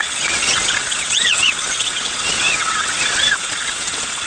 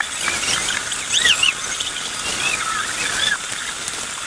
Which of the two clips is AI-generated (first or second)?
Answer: first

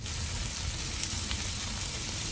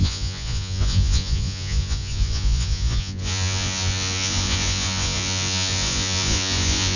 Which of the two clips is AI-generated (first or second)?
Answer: second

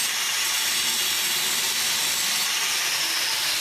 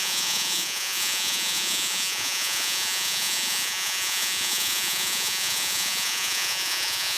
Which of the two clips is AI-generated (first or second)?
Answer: second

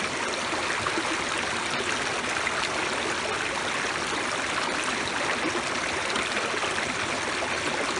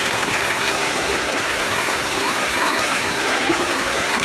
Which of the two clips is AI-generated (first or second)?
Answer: second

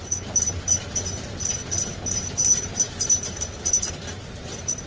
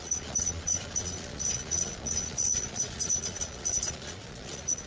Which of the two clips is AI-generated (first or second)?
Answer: second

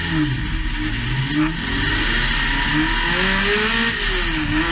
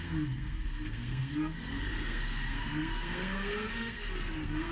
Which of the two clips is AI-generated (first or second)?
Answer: second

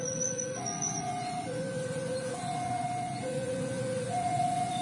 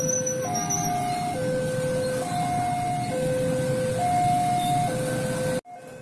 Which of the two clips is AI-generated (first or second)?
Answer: first